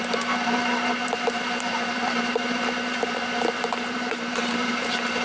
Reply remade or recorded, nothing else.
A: remade